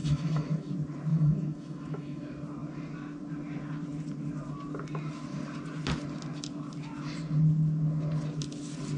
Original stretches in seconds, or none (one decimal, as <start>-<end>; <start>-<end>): 0.7-1.1; 2.2-9.0